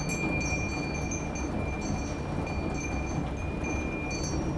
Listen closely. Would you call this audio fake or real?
real